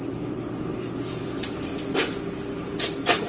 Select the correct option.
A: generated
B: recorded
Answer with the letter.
B